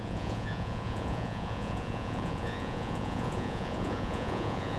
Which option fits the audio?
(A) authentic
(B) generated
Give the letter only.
B